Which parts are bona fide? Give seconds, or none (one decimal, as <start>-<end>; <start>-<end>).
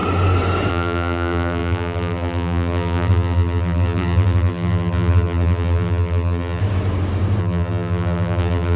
0.0-0.7; 6.6-7.4